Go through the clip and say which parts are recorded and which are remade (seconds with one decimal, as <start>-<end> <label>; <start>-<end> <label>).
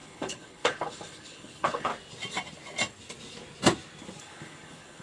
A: 0.0-1.9 remade; 1.9-4.2 recorded; 4.2-5.0 remade